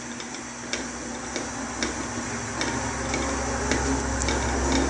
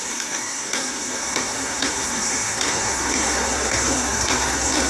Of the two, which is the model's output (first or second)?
second